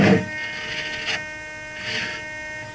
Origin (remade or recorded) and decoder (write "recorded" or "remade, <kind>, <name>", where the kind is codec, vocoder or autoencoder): recorded